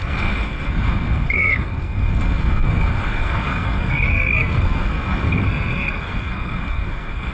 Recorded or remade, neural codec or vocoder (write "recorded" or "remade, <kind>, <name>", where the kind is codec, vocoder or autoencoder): remade, codec, SNAC